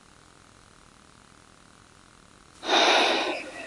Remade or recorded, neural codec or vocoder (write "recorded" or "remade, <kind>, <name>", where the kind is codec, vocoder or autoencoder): recorded